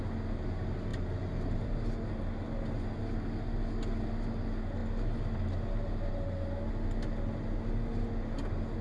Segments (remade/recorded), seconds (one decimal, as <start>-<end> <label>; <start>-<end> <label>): 0.0-8.8 recorded